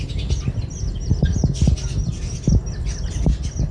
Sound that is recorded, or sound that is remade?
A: recorded